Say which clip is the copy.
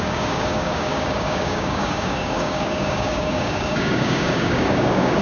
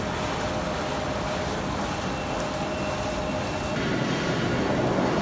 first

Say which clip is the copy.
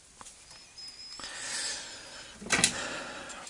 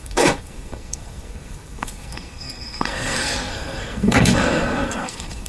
second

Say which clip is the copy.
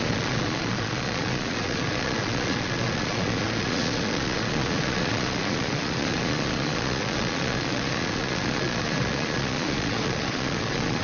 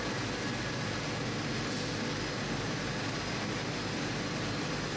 first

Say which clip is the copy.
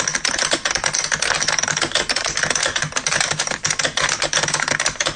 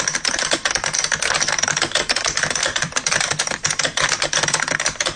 second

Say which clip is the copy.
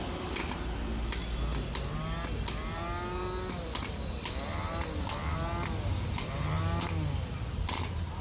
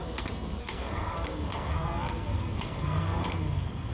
second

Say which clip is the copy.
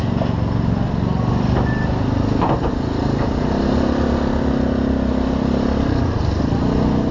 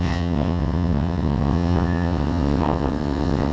second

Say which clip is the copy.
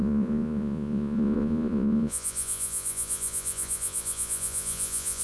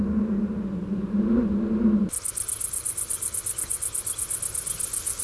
first